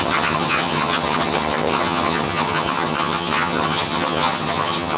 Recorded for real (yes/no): no